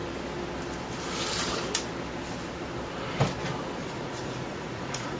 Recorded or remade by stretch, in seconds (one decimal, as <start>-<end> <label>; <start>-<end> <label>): 0.0-3.8 recorded; 3.8-5.2 remade